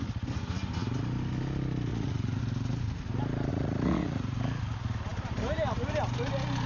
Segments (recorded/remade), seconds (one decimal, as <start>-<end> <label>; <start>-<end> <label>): 0.0-1.9 recorded; 1.9-2.4 remade; 2.4-3.5 recorded; 3.5-4.4 remade; 4.4-6.7 recorded